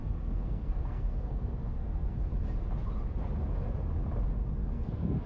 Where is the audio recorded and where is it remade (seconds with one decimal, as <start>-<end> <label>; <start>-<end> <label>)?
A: 0.0-2.3 remade; 2.3-4.7 recorded; 4.7-5.3 remade

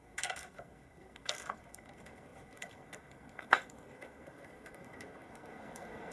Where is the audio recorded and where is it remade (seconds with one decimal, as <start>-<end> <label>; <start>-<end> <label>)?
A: 0.0-6.1 remade

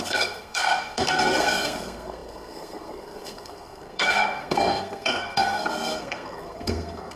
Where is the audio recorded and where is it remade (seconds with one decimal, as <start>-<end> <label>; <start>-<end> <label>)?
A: 0.0-7.2 remade

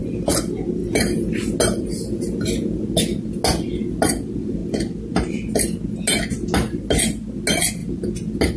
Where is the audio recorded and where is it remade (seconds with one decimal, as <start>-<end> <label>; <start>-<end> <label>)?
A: 0.0-8.6 recorded

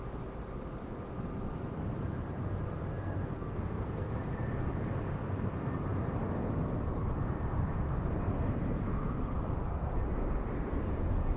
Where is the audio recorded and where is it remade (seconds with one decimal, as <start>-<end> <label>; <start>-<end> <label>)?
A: 0.0-3.0 recorded; 3.0-4.1 remade; 4.1-11.4 recorded